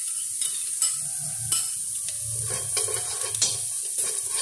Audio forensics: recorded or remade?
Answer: recorded